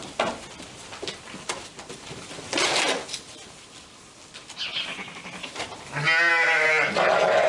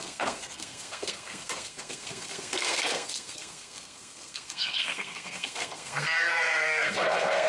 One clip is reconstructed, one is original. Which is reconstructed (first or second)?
second